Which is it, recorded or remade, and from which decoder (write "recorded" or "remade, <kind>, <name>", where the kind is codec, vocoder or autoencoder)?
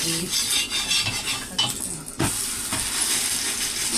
recorded